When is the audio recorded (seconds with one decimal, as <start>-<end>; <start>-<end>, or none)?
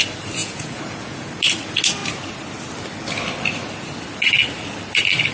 0.0-0.4; 1.3-5.3